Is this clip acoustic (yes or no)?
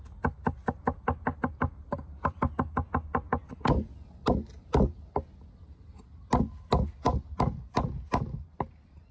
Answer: yes